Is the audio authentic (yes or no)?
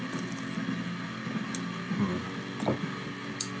yes